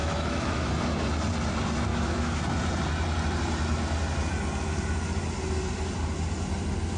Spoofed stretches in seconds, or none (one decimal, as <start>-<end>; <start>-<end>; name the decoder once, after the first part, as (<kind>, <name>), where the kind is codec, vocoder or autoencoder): 0.0-0.7 (autoencoder, DAC-VAE); 1.9-2.4